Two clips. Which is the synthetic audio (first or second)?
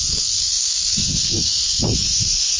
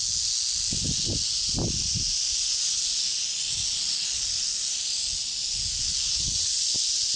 first